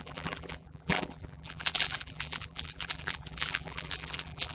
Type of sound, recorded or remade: remade